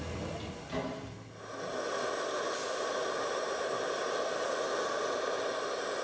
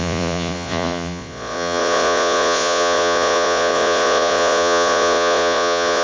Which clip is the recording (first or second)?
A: first